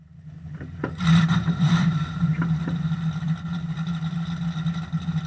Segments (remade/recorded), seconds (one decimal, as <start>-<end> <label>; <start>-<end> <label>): 0.0-2.3 remade; 2.3-5.3 recorded